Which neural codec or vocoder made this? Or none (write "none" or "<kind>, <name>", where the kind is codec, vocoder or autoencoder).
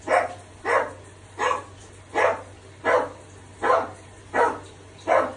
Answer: none